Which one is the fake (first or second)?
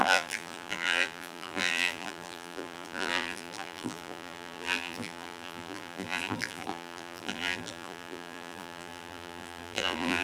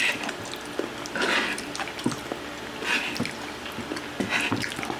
first